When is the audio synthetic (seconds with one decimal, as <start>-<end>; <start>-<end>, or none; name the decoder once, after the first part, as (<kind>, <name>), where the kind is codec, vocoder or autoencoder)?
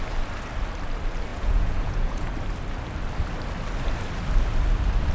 1.3-2.3 (vocoder, Vocos)